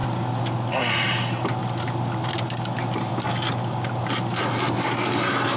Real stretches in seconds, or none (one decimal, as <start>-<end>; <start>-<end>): 0.0-5.6